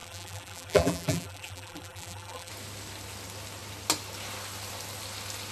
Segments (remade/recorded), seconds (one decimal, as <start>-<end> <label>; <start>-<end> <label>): 0.0-2.5 remade; 2.5-5.5 recorded